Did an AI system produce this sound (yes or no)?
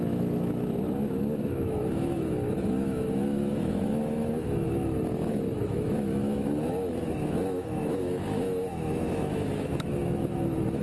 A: yes